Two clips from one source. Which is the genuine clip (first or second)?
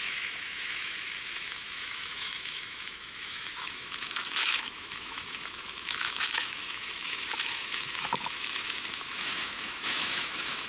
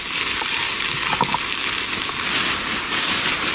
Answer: second